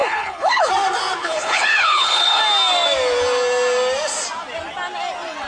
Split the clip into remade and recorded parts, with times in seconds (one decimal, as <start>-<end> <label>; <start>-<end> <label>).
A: 0.0-0.7 remade; 0.7-1.2 recorded; 1.2-2.4 remade; 2.4-5.5 recorded